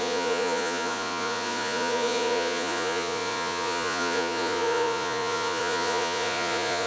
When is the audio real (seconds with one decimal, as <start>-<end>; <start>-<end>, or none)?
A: none